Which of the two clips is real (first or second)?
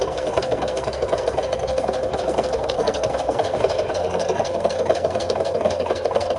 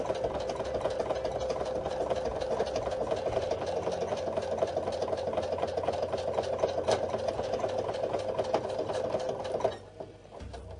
second